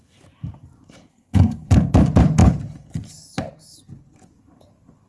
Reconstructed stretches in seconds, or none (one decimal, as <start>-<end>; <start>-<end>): 1.1-1.7